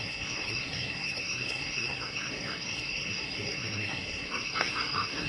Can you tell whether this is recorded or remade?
remade